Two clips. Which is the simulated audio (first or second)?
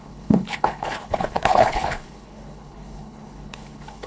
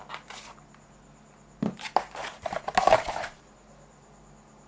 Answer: first